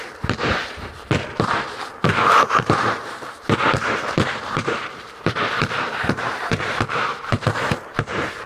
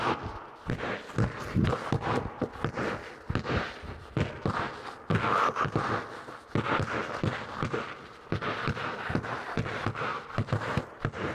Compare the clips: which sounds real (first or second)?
second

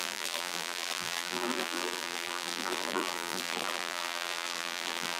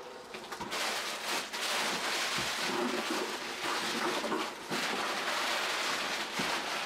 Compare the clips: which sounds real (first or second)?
second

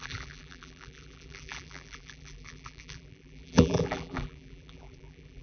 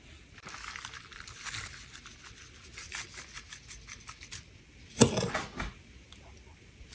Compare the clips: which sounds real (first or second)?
second